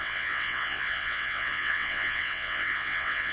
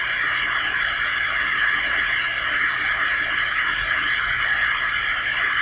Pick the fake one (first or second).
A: first